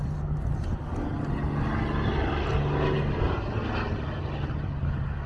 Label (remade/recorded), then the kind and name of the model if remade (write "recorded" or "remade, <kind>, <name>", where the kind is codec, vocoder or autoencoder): recorded